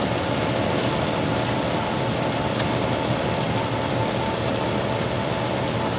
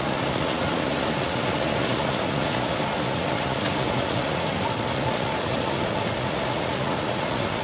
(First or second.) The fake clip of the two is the second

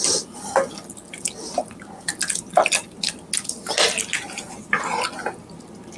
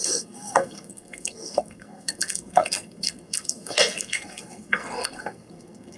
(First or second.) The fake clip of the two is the second